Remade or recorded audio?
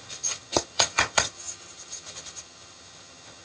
remade